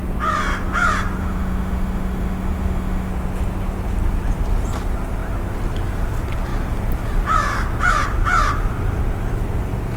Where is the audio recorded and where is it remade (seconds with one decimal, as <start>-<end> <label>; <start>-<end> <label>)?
0.0-1.2 recorded; 1.2-3.1 remade; 3.1-10.0 recorded